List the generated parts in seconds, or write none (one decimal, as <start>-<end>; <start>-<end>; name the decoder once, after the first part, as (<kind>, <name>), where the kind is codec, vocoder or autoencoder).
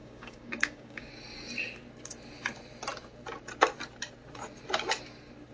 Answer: 0.0-1.1 (codec, DAC)